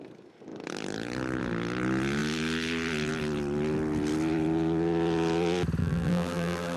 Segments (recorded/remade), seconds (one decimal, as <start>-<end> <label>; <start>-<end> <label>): 0.0-5.8 recorded; 5.8-6.8 remade